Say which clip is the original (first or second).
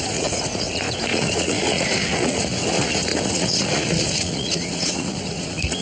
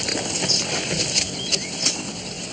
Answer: second